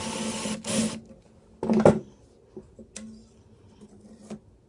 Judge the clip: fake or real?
real